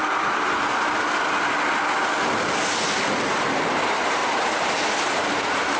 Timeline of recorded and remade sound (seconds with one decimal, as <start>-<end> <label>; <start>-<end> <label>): 0.0-4.2 recorded; 4.2-5.8 remade